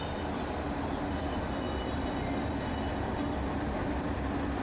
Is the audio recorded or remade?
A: recorded